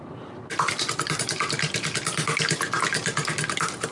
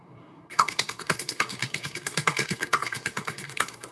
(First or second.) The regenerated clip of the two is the second